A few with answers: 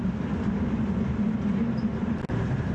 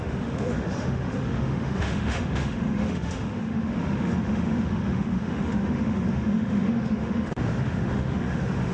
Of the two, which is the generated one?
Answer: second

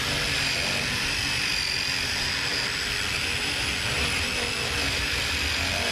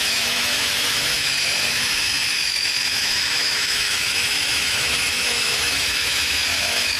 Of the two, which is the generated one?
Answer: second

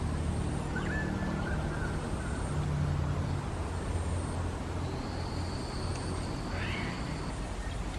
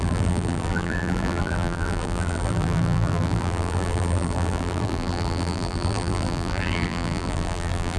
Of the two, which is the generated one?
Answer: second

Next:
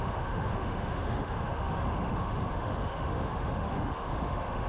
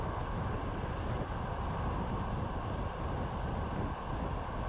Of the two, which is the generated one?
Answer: first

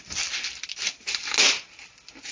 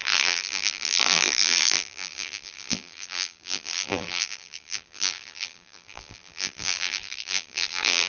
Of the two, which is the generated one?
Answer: second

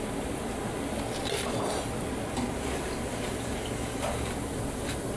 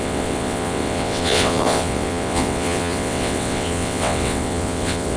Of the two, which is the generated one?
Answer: second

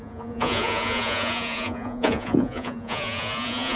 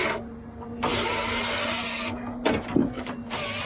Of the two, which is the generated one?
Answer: first